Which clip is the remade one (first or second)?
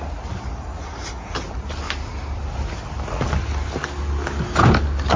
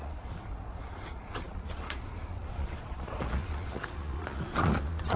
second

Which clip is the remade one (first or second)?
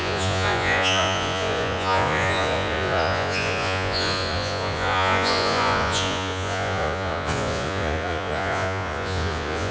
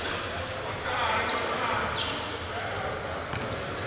first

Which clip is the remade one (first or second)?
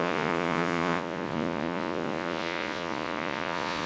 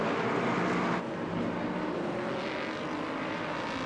first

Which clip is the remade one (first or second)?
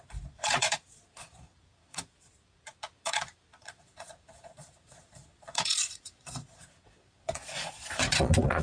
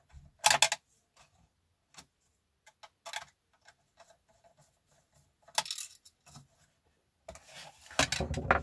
first